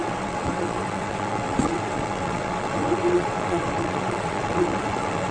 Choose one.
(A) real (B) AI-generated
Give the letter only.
B